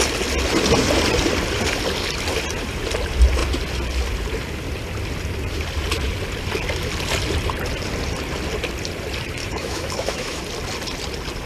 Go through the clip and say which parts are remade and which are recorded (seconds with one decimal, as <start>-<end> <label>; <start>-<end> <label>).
0.0-9.4 recorded; 9.4-10.4 remade; 10.4-11.5 recorded